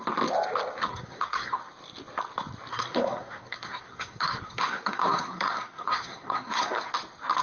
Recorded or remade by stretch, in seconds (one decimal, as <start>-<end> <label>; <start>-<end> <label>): 0.0-0.9 recorded; 0.9-1.6 remade; 1.6-2.7 recorded; 2.7-6.9 remade; 6.9-7.4 recorded